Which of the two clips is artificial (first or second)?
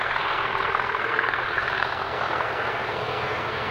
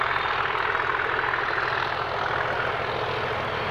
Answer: first